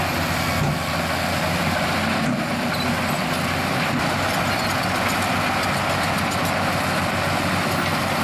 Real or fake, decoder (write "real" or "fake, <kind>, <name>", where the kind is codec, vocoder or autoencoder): real